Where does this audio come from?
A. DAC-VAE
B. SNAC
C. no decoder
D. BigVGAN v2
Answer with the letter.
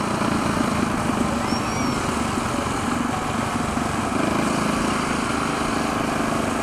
C